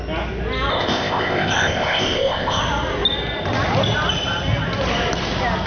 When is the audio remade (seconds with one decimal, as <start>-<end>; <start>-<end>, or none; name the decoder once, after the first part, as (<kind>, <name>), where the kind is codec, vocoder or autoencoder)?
0.7-2.6 (codec, ZipCodec)